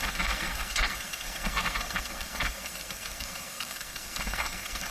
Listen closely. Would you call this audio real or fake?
fake